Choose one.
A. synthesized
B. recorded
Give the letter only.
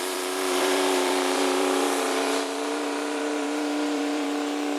A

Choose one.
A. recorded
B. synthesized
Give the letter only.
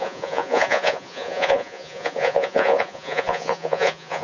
B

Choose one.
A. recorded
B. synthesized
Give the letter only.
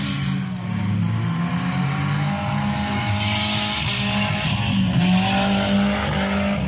A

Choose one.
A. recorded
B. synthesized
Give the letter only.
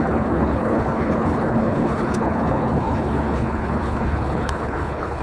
B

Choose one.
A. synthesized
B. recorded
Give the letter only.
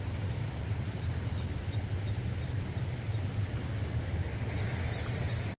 B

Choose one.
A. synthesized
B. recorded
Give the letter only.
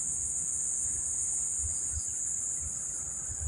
B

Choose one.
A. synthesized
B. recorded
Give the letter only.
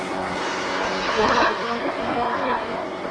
A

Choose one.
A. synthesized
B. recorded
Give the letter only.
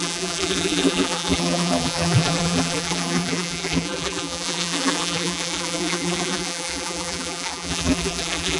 A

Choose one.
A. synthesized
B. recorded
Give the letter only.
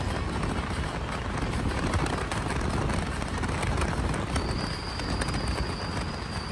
B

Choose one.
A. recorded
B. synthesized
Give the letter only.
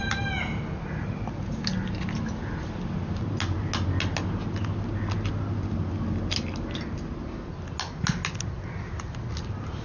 A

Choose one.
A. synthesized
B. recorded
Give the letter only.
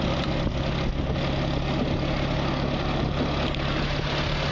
B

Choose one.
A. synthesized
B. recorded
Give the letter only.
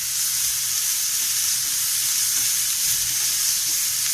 B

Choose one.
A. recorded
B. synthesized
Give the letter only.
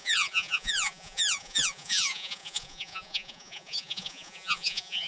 B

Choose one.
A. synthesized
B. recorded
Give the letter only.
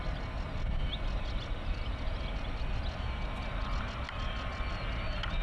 B